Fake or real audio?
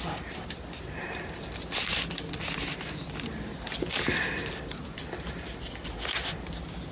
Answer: real